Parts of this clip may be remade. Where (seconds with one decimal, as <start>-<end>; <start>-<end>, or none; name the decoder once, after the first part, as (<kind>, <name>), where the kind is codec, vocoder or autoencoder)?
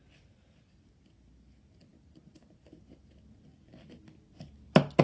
none